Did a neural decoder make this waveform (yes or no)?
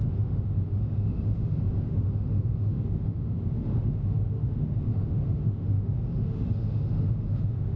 yes